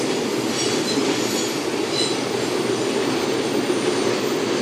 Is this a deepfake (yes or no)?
no